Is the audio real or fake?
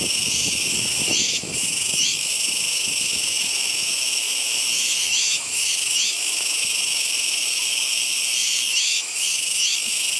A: fake